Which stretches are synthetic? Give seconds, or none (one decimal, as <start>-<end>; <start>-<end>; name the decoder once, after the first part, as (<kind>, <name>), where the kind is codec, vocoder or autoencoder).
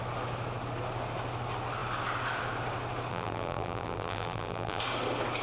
3.1-4.8 (vocoder, BigVGAN v2)